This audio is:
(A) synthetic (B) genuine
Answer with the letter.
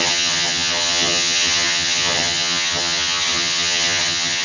A